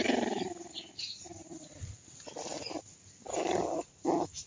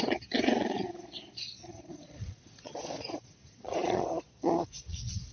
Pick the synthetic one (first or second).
second